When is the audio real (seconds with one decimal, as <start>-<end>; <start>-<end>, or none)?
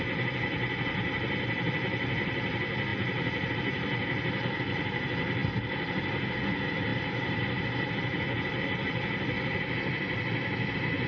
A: 0.0-6.9; 7.9-11.1